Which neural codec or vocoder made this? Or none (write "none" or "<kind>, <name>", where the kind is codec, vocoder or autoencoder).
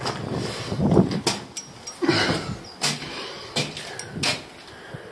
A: none